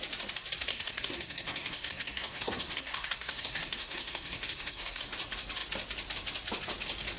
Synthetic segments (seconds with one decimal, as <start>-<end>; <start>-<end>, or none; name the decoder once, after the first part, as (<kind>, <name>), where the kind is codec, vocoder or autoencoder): 0.7-5.0 (codec, SNAC)